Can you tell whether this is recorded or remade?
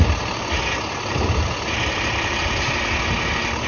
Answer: recorded